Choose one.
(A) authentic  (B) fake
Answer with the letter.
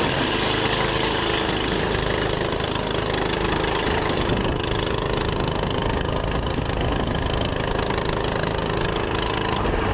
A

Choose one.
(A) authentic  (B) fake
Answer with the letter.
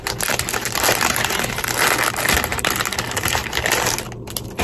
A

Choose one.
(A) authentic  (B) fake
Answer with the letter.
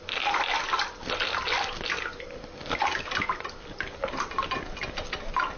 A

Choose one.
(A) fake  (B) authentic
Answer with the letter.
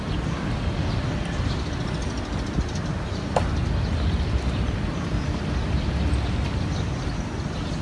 B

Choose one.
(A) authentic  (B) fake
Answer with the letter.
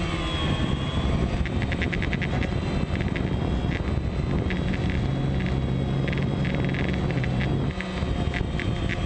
A